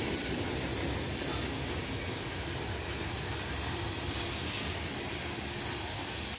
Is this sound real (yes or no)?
yes